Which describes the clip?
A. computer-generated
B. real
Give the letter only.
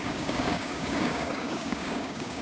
A